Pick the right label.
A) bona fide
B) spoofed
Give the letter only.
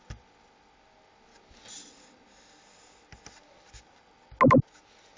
A